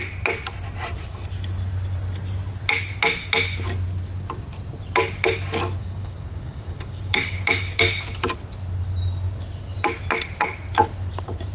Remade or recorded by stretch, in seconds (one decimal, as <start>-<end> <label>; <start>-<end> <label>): 0.0-5.8 recorded; 5.8-7.8 remade; 7.8-11.5 recorded